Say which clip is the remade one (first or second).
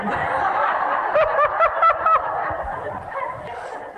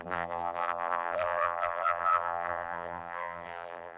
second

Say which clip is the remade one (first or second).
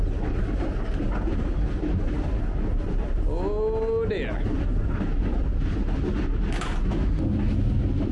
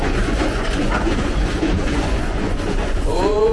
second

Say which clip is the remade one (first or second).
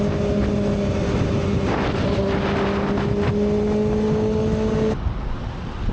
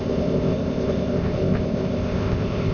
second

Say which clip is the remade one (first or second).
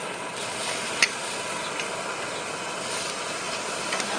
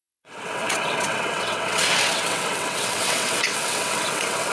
second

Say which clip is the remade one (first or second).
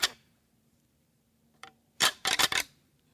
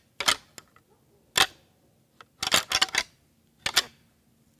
first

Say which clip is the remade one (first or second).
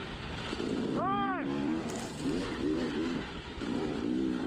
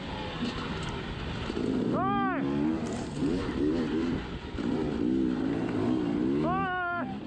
first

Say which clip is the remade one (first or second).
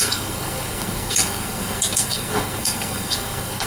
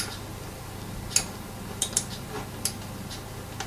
first